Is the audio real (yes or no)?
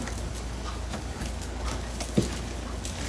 no